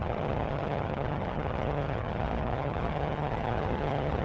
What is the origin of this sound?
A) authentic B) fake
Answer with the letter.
B